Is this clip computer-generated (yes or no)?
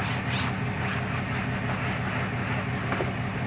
no